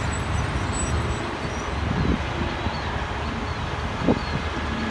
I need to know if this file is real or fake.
real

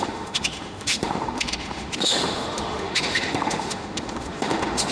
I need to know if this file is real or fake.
fake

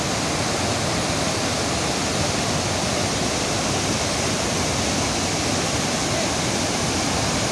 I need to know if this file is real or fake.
real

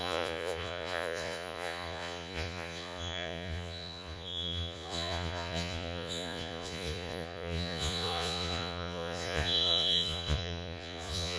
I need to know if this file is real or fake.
fake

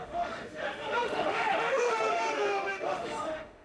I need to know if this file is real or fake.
fake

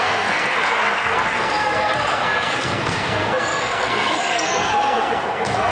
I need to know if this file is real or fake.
fake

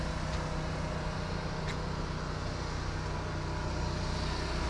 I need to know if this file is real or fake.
real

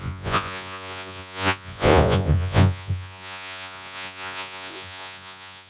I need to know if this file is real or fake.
fake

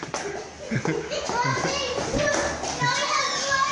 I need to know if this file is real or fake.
real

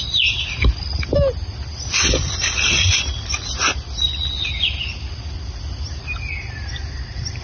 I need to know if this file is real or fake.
real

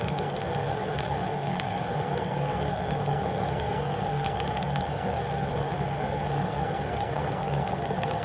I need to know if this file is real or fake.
fake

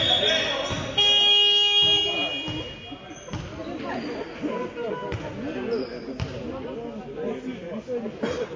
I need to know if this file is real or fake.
real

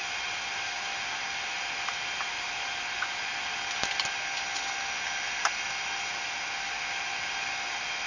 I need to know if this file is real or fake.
real